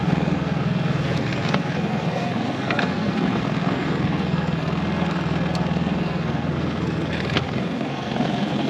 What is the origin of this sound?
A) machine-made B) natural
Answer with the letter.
A